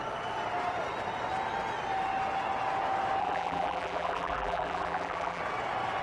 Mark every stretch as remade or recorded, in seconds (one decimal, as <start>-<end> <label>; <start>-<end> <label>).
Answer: 0.0-3.2 recorded; 3.2-5.4 remade; 5.4-6.0 recorded